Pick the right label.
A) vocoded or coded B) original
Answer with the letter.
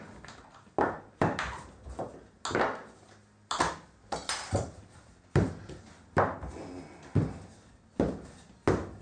B